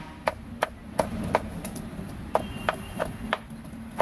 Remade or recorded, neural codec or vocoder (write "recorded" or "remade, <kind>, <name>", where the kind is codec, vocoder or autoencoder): recorded